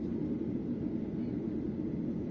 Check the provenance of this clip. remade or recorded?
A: recorded